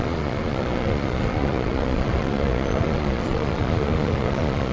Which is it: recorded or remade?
remade